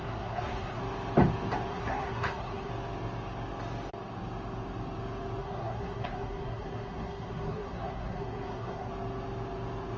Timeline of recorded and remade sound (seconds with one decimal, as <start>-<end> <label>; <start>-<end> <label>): 0.0-0.8 remade; 0.8-1.7 recorded; 1.7-2.7 remade; 2.7-5.4 recorded; 5.4-8.9 remade; 8.9-10.0 recorded